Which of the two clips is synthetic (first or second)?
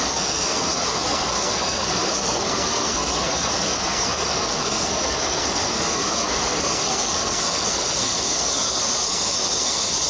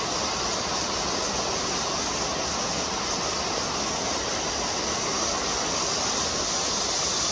first